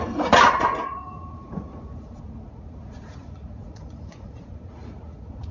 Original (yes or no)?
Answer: no